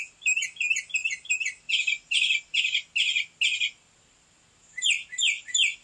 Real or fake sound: real